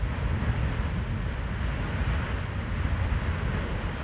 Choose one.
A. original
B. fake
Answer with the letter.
A